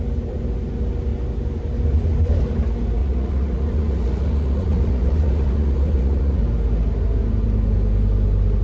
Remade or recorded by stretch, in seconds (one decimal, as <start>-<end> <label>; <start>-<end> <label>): 0.0-3.0 recorded; 3.0-6.4 remade; 6.4-8.6 recorded